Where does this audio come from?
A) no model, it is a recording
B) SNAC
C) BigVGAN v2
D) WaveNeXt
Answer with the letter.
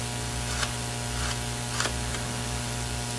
A